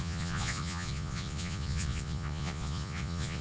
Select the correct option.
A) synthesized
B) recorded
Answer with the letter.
A